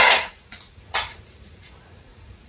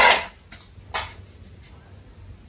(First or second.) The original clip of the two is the second